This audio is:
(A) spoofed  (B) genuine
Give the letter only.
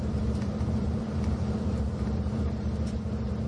A